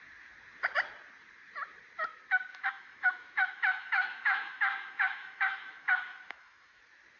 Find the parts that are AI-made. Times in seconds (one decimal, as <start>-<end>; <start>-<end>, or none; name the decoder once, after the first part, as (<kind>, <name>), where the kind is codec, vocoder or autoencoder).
2.5-6.8 (autoencoder, DAC-VAE)

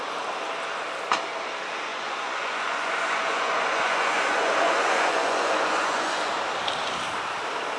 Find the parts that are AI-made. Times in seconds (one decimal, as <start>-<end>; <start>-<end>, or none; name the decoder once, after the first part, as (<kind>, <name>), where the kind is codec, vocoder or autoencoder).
1.9-6.3 (vocoder, Vocos)

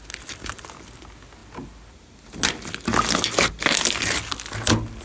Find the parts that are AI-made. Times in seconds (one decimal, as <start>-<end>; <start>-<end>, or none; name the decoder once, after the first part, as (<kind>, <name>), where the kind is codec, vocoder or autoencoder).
none

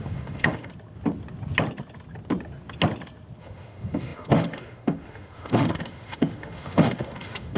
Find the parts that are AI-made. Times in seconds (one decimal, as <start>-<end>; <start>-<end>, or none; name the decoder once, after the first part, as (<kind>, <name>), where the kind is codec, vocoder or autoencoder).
0.0-0.7 (autoencoder, DAC-VAE); 3.4-7.6

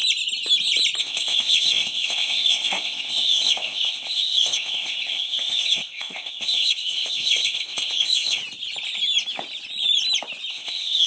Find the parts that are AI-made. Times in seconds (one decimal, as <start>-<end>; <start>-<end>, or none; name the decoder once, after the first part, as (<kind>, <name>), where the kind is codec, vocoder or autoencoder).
1.0-8.4 (codec, ZipCodec); 10.5-11.1

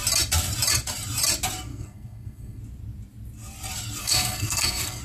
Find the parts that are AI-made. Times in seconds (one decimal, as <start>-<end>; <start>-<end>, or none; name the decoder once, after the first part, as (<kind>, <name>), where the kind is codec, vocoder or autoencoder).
1.7-2.6 (codec, SNAC); 4.0-5.0

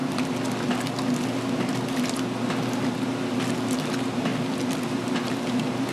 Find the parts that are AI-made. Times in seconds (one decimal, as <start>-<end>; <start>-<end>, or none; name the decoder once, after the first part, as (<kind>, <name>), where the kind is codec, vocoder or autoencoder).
3.5-4.3 (vocoder, BigVGAN v2); 4.8-5.9

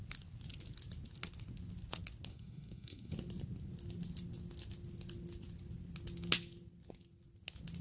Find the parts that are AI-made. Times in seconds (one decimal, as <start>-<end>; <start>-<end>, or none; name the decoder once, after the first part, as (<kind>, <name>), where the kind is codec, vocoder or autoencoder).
2.3-3.1 (codec, SNAC)